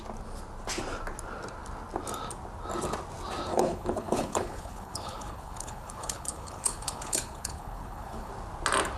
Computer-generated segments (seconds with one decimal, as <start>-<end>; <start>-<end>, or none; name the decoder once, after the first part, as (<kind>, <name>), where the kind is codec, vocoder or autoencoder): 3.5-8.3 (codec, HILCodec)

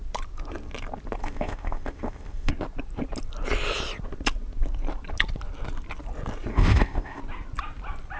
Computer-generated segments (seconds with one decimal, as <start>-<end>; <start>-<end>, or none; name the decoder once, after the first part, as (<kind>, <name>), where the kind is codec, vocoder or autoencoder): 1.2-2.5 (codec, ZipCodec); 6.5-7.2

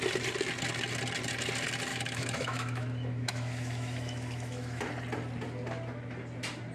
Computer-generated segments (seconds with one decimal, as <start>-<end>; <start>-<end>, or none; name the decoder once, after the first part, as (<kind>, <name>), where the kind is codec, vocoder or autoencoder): 1.9-4.8 (autoencoder, DAC-VAE)

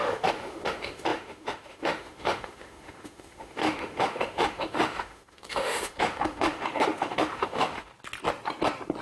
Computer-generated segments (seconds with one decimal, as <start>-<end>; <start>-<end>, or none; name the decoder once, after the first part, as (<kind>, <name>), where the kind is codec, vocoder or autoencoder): 0.0-7.9 (autoencoder, DAC-VAE)